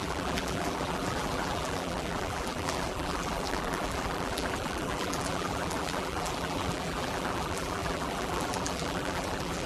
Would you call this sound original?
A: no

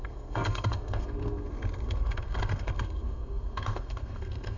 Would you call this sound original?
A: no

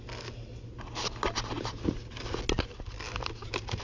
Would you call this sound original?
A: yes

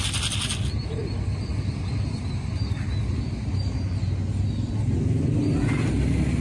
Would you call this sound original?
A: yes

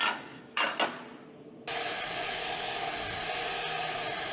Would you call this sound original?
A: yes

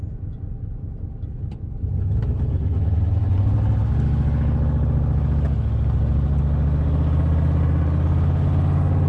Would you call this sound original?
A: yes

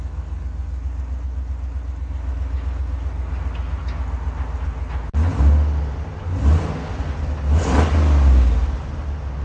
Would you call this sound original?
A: yes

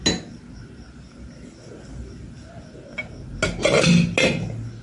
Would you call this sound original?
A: yes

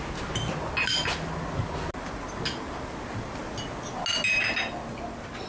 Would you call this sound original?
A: yes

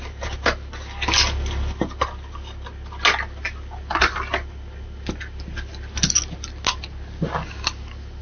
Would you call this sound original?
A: yes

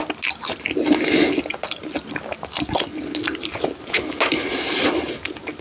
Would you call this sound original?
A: yes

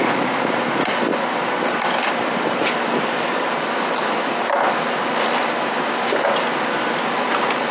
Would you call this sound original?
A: yes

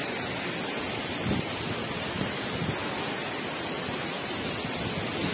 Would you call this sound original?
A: yes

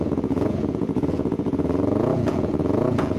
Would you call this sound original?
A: no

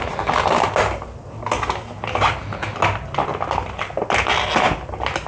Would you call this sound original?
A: yes